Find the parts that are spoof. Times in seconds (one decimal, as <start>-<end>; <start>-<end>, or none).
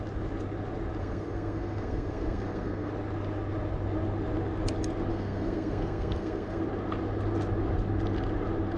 1.0-2.9; 5.1-6.6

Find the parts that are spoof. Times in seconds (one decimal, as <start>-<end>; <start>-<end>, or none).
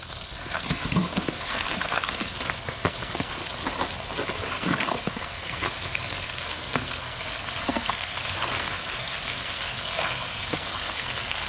0.0-3.4; 4.5-11.5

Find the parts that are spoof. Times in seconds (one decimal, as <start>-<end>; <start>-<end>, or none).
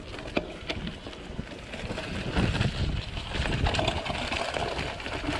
none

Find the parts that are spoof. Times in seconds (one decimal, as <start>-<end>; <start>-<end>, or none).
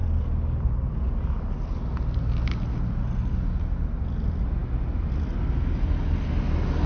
none